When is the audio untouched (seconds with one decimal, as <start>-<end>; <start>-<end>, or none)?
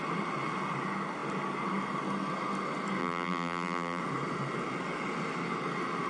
0.0-3.0; 4.0-6.1